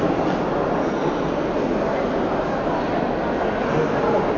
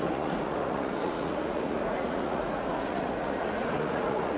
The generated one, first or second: second